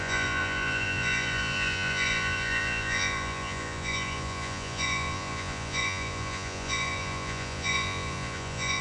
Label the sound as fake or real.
fake